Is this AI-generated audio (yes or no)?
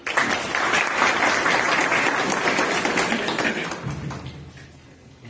no